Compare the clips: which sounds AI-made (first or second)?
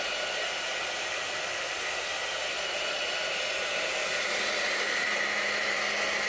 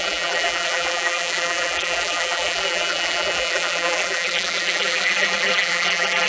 second